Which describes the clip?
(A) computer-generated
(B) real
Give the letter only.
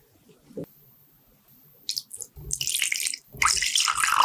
B